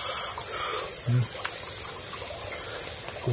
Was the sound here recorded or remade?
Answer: recorded